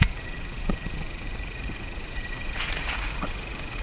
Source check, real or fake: fake